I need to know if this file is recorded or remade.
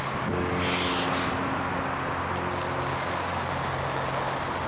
recorded